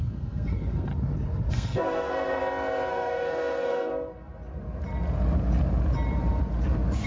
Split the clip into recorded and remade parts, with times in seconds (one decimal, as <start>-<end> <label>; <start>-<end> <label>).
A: 0.0-0.9 remade; 0.9-1.5 recorded; 1.5-2.4 remade; 2.4-2.9 recorded; 2.9-3.9 remade; 3.9-7.1 recorded